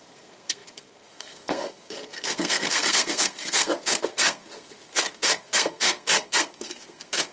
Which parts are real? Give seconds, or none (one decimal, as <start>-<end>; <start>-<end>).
none